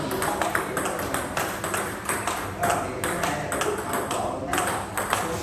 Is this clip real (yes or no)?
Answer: yes